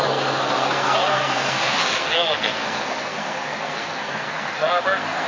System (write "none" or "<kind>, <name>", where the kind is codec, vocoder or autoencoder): codec, SNAC